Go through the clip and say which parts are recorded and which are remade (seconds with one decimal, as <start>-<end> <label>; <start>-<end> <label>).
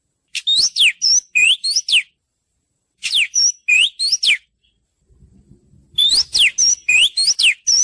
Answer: 0.0-2.3 recorded; 2.3-3.5 remade; 3.5-7.8 recorded